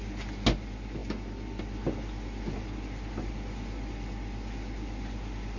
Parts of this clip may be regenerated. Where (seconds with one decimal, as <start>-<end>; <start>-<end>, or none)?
none